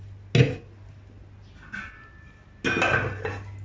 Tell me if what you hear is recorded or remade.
recorded